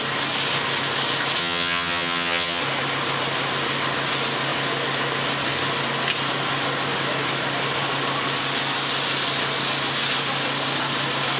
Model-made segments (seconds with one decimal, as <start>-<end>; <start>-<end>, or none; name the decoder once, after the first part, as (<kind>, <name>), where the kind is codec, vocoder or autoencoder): 1.4-2.6 (vocoder, HiFi-GAN)